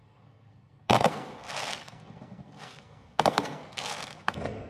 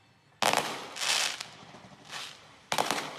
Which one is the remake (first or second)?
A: first